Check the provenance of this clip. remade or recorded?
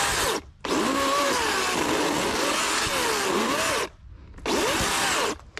recorded